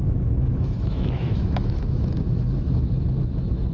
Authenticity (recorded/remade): remade